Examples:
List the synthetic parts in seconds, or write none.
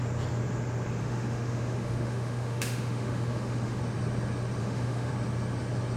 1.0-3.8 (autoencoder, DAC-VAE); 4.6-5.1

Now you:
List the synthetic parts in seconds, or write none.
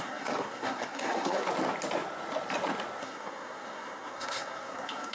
0.0-1.4 (codec, SNAC); 3.0-5.1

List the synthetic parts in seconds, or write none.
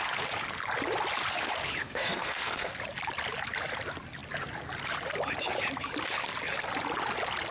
1.8-2.7 (codec, SNAC)